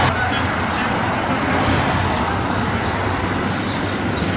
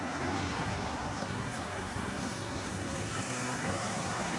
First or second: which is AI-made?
second